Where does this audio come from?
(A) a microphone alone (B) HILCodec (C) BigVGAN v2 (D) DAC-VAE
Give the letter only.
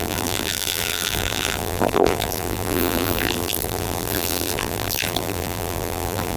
C